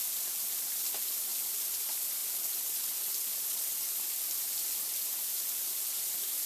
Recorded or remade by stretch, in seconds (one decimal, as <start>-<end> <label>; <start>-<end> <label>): 0.0-6.5 recorded